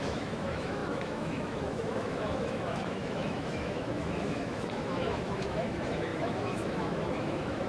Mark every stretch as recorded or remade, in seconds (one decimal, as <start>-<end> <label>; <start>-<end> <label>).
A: 0.0-7.7 remade